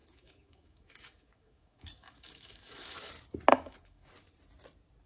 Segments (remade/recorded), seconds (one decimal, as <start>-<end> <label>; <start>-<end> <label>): 0.0-3.1 remade; 3.1-3.5 recorded; 3.5-4.1 remade; 4.1-5.1 recorded